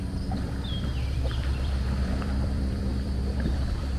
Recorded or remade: remade